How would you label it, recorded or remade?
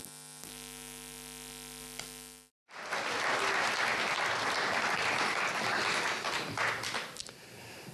recorded